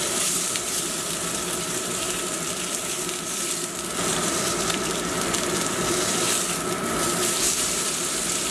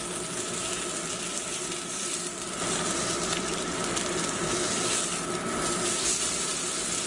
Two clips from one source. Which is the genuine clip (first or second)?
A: second